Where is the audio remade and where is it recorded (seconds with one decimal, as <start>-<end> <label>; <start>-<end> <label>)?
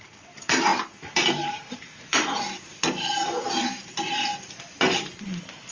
0.0-5.7 remade